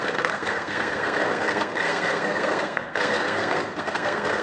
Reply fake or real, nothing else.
fake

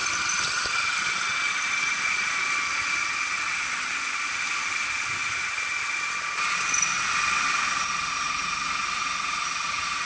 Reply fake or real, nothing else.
real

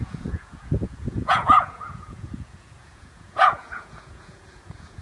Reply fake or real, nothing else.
fake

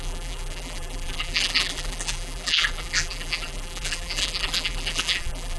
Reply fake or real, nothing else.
fake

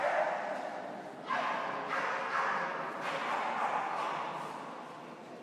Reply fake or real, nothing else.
real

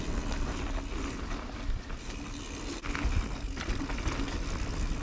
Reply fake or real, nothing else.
real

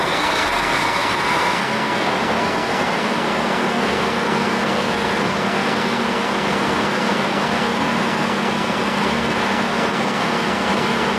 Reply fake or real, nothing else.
fake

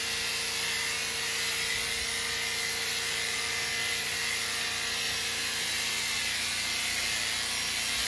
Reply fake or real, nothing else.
real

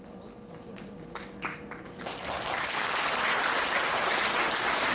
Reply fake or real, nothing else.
real